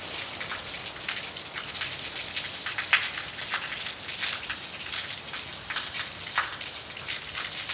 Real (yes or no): yes